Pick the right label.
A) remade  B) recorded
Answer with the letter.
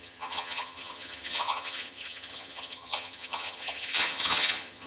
A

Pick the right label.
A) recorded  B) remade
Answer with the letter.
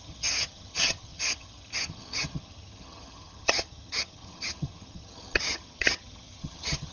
B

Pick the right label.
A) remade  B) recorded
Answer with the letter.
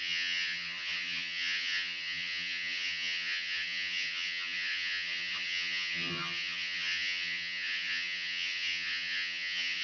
A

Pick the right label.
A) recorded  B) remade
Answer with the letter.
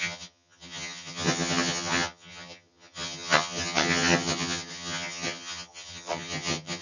B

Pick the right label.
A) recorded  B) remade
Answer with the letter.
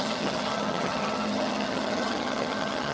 B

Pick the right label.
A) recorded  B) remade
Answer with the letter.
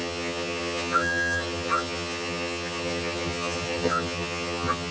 B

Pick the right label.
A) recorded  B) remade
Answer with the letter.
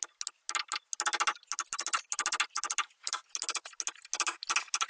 A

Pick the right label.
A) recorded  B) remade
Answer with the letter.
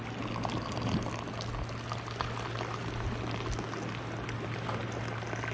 A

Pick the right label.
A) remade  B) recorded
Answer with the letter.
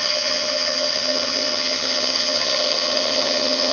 A